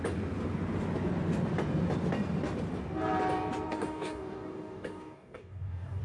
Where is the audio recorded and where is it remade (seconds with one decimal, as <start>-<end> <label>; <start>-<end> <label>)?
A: 0.0-3.7 recorded; 3.7-6.0 remade